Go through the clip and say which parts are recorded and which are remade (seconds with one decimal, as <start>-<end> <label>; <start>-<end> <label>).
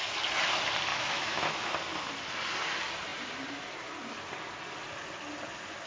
0.0-0.9 recorded; 0.9-1.7 remade; 1.7-5.9 recorded